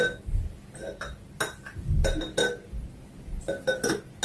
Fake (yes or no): no